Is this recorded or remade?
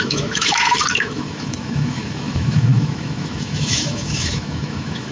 remade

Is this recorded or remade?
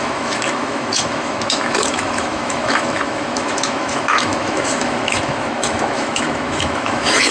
remade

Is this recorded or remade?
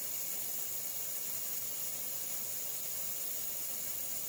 recorded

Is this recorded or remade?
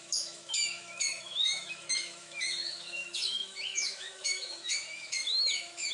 remade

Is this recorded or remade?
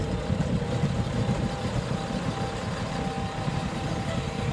recorded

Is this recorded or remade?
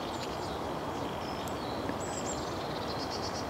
recorded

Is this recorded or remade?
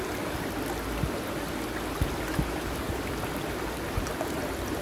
recorded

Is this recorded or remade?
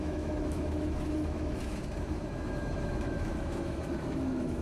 remade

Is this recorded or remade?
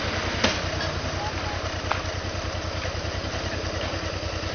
recorded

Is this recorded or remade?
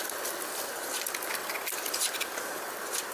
recorded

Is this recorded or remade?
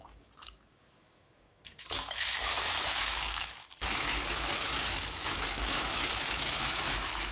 remade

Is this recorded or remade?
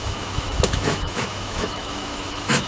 remade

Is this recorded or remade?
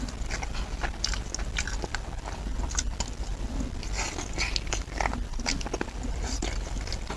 recorded